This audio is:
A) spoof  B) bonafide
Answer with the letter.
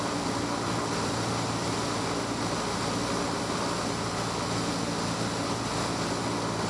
B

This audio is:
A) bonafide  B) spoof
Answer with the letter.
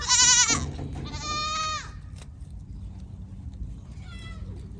A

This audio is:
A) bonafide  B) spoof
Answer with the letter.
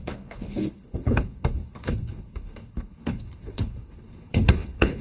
B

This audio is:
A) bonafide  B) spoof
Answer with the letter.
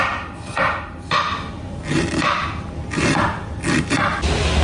A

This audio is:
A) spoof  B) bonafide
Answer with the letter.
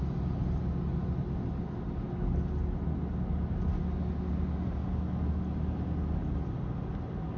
B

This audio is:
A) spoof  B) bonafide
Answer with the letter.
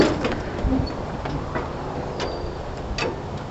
B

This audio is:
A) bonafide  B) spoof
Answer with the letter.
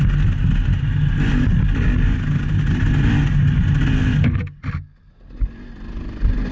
A